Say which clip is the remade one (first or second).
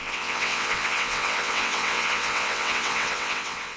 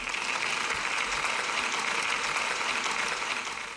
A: first